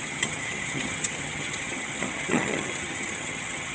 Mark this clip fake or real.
fake